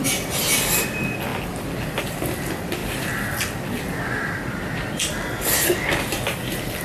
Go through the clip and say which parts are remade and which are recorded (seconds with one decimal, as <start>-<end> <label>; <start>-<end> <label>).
0.0-6.8 recorded